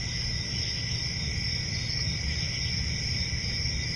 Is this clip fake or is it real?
real